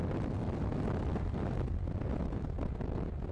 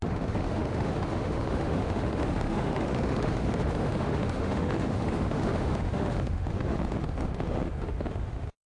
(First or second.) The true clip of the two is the first